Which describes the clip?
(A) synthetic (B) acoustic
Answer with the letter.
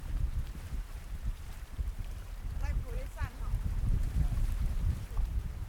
A